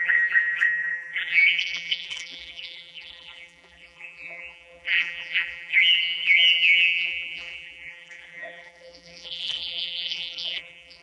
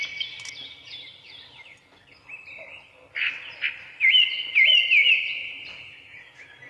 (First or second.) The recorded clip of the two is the second